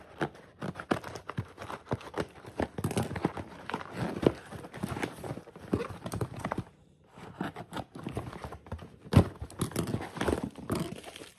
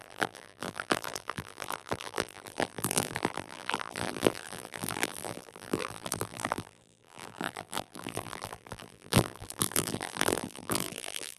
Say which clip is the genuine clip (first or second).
first